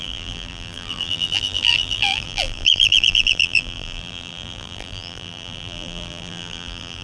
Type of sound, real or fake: fake